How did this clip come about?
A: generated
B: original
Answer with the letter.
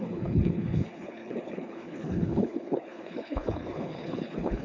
A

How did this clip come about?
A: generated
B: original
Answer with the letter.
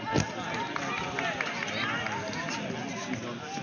B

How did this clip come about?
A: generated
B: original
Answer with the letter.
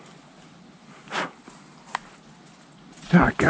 B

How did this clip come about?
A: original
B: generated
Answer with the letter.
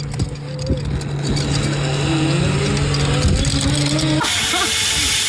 A